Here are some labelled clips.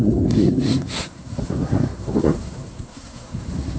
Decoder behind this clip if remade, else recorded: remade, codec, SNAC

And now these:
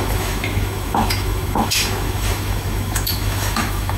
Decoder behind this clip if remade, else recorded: remade, autoencoder, DAC-VAE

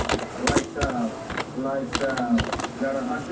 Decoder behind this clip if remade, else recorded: recorded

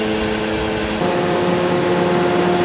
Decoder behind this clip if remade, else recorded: recorded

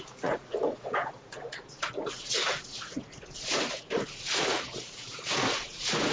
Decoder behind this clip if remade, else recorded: remade, vocoder, Vocos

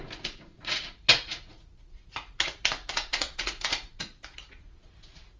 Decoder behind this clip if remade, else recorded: remade, vocoder, Vocos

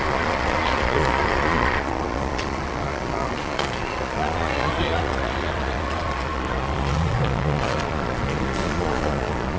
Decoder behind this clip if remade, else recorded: remade, vocoder, Vocos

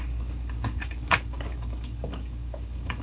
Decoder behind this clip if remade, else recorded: remade, codec, DAC